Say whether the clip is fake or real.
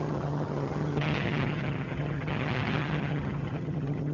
fake